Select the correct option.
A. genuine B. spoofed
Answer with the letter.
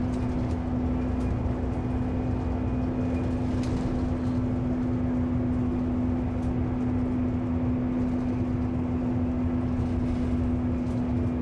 A